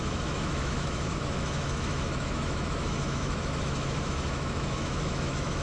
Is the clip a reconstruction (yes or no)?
yes